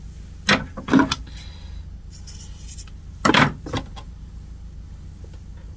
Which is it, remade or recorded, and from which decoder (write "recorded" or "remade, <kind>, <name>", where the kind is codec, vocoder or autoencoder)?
recorded